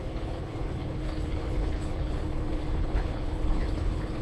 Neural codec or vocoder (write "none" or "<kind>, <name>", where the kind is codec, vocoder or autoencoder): codec, HILCodec